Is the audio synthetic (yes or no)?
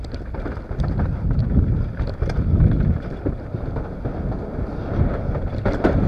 no